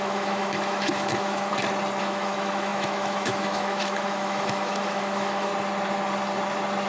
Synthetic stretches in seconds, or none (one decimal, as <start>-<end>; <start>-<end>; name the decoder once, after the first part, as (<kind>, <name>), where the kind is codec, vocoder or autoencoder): 0.0-1.5 (autoencoder, DAC-VAE); 2.0-5.5